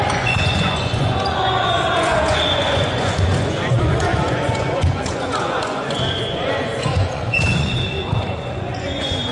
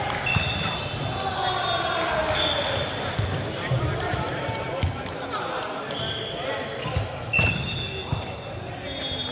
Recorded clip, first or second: second